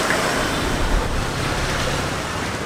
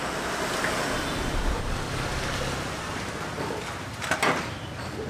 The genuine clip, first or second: second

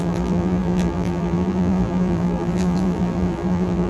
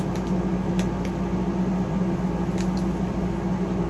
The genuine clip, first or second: second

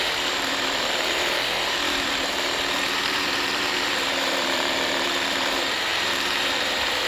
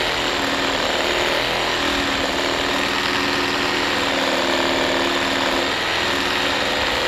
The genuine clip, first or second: second